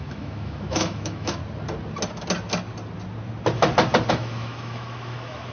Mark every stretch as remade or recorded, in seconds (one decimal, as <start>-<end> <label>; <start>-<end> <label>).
0.0-1.4 remade; 1.4-4.1 recorded; 4.1-5.5 remade